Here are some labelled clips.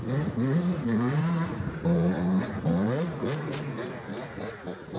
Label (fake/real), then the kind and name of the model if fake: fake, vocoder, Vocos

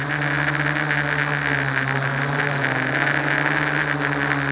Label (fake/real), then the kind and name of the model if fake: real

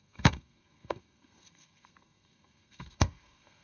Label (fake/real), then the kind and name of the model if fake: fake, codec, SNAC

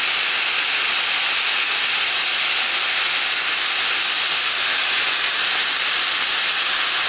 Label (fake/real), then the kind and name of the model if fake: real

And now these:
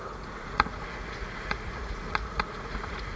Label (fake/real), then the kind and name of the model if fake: fake, vocoder, Vocos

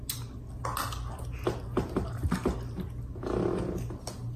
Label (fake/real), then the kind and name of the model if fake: real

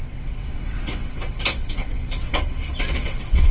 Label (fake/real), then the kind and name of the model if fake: fake, vocoder, WaveNeXt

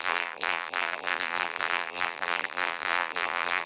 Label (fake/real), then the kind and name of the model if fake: fake, vocoder, BigVGAN v2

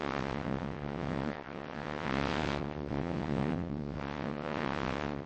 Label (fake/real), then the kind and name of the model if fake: fake, vocoder, WaveNeXt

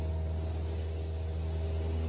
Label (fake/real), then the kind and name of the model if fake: real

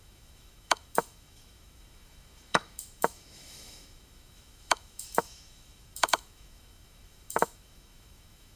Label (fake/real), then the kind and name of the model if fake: fake, autoencoder, DAC-VAE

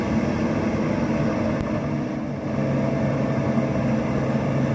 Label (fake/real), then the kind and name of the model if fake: real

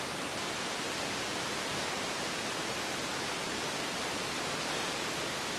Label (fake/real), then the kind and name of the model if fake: real